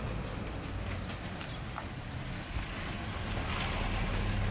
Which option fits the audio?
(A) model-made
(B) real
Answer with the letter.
B